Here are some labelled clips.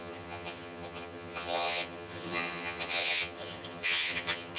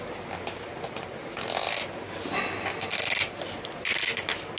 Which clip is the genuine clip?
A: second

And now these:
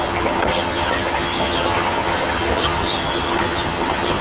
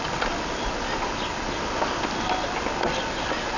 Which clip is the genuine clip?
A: second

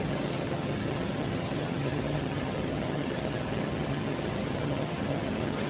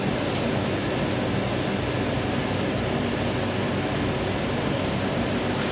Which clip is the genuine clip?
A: second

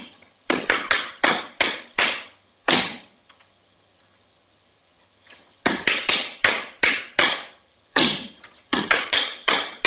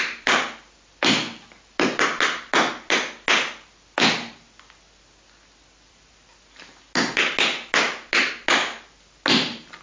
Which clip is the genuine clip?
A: second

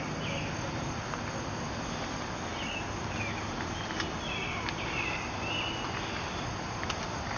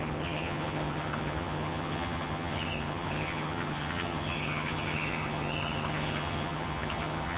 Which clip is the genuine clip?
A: first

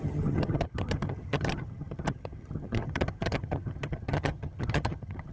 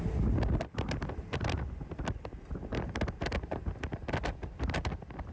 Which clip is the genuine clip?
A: second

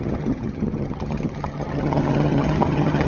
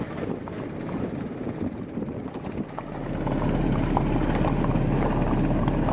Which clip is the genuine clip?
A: second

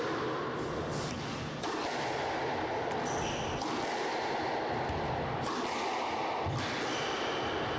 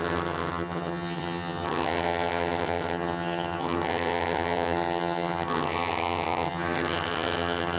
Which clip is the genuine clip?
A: first